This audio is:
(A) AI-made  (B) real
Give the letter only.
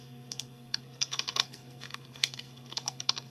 A